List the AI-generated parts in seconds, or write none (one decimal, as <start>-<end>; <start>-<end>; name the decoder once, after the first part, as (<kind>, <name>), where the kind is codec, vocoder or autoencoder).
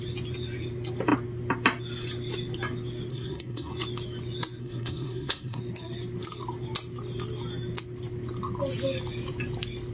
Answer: 3.1-3.7 (codec, SNAC); 4.6-5.6